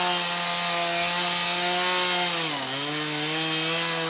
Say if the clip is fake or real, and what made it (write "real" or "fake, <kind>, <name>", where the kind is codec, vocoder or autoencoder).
real